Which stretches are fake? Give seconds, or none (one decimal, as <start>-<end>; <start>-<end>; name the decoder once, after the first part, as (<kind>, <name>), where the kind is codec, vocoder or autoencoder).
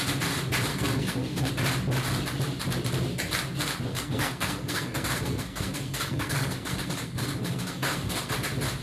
0.7-1.5 (codec, SNAC); 3.9-8.3